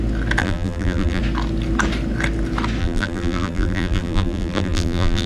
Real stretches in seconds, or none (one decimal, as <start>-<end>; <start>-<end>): 0.0-0.4; 1.2-2.8